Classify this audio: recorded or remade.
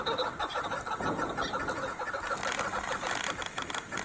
recorded